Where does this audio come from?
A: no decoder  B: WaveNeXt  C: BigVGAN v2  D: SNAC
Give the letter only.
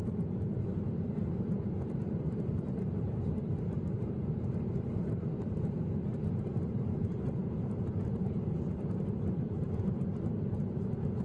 C